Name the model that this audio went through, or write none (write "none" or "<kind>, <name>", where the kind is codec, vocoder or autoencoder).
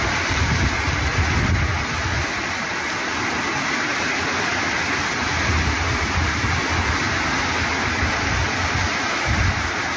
none